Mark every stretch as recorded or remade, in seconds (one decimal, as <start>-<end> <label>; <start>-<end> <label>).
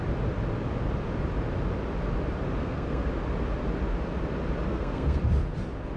0.0-2.6 recorded; 2.6-3.1 remade; 3.1-4.7 recorded; 4.7-5.2 remade; 5.2-6.0 recorded